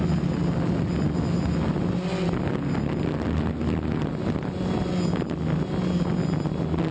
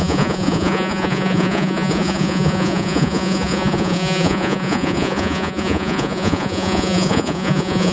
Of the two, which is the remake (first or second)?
second